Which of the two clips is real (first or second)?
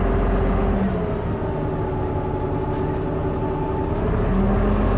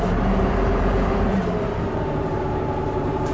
first